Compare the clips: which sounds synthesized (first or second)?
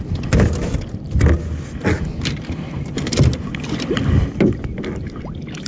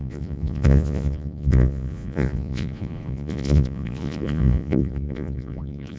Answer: second